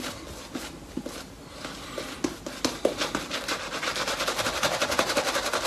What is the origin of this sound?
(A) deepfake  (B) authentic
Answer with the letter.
B